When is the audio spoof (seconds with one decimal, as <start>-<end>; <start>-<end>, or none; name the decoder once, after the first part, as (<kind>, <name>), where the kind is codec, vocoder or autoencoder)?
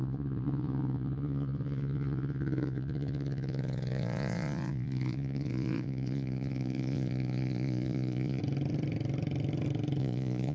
0.0-8.4 (vocoder, Vocos); 10.0-10.5